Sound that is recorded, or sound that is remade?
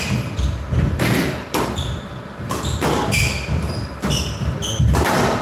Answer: recorded